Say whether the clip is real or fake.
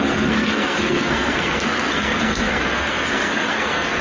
fake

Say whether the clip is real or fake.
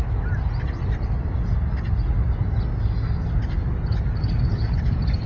real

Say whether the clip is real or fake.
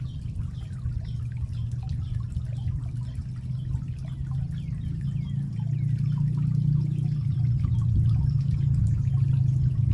real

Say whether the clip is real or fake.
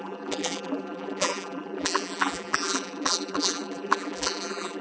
fake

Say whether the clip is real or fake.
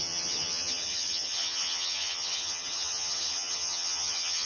fake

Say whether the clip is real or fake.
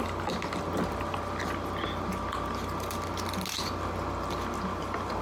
real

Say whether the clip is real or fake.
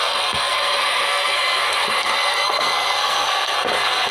fake